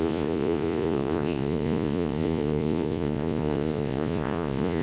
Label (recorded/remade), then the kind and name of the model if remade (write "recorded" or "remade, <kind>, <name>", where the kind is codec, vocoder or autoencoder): remade, vocoder, Vocos